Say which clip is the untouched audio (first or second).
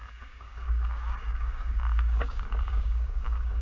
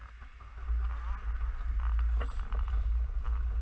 second